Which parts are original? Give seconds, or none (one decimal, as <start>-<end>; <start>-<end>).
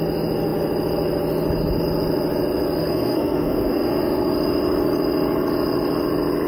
0.0-2.8; 3.9-6.5